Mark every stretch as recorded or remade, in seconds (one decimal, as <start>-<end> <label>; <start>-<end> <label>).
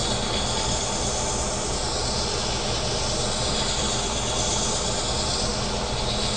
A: 0.0-6.4 recorded